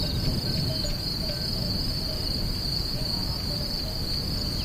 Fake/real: real